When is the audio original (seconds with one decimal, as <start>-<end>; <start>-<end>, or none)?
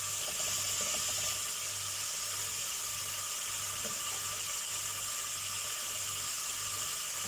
0.0-7.3